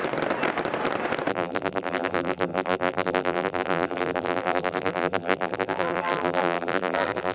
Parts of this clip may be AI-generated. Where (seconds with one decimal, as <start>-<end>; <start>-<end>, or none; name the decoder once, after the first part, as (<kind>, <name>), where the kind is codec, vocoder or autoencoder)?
1.3-7.3 (vocoder, BigVGAN v2)